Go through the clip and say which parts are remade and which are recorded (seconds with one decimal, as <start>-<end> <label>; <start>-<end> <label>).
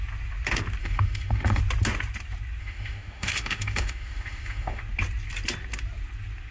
0.0-0.8 recorded; 0.8-1.6 remade; 1.6-2.6 recorded; 2.6-4.8 remade; 4.8-6.5 recorded